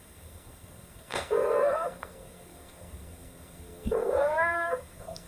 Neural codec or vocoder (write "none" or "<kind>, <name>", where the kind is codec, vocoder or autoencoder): codec, SNAC